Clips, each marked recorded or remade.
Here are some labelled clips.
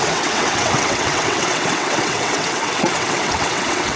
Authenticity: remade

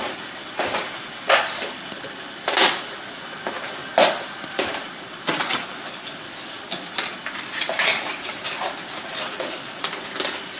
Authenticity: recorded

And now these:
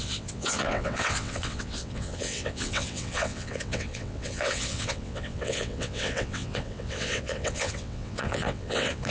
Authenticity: remade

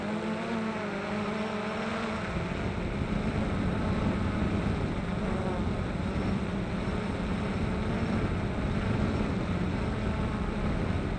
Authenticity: recorded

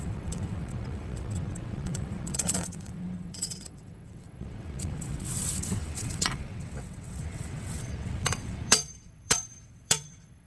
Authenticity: remade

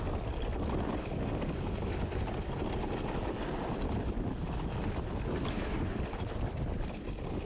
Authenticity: recorded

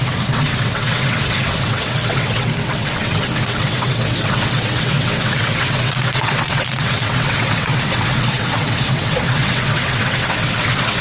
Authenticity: remade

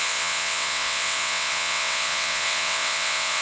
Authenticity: remade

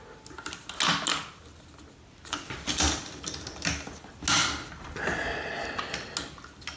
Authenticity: recorded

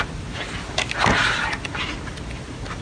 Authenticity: recorded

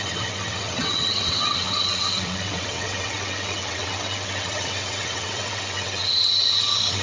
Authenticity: remade